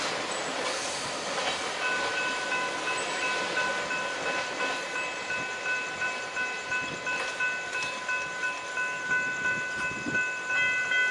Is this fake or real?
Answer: real